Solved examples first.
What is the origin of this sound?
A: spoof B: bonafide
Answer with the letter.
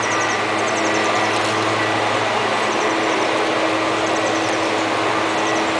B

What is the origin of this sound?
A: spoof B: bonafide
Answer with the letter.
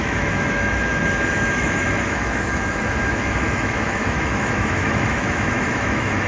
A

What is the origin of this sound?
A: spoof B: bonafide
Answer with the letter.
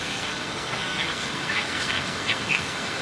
A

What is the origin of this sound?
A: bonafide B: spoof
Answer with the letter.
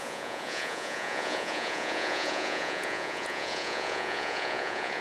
B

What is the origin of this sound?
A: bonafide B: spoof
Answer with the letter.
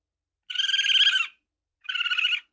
A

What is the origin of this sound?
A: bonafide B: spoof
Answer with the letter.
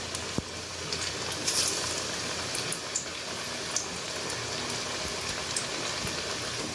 A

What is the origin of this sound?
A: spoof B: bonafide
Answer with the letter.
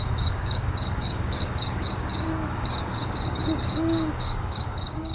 A